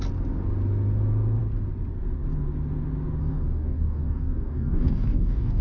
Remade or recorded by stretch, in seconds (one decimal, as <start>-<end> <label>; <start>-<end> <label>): 0.0-3.2 recorded; 3.2-5.6 remade